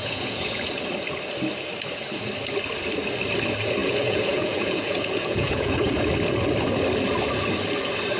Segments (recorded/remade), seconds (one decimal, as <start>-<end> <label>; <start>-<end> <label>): 0.0-0.7 remade; 0.7-3.8 recorded; 3.8-6.1 remade; 6.1-8.2 recorded